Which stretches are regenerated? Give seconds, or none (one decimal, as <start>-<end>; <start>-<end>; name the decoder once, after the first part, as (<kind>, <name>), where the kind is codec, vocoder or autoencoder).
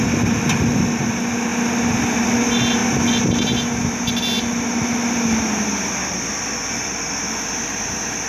none